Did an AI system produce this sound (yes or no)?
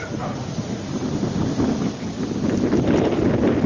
no